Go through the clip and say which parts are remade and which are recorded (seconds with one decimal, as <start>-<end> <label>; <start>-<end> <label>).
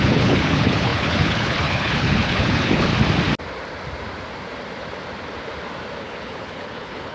0.0-2.9 remade; 2.9-6.0 recorded; 6.0-7.1 remade